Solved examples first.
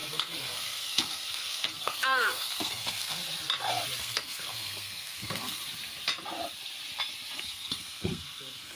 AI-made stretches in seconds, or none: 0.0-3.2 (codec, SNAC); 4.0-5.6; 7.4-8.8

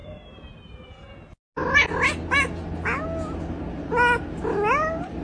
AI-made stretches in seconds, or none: none

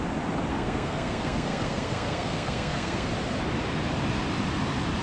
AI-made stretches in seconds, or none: 0.5-3.1 (codec, SNAC)

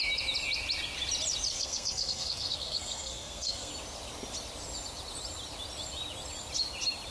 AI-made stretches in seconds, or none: 1.5-3.7 (codec, SNAC)

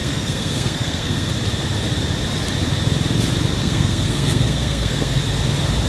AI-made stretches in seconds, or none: 0.0-1.3 (codec, SNAC); 3.6-5.2

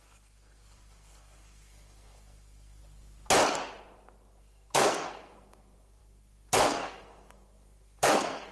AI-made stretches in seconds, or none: 0.0-2.8 (codec, SNAC); 4.4-8.5

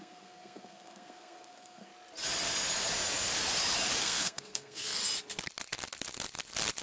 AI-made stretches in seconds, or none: 0.0-1.9 (codec, SNAC); 4.0-5.0